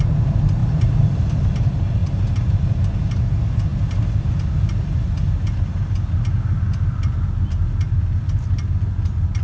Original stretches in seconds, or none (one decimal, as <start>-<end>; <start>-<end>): 0.0-0.6; 1.5-2.0; 2.9-9.4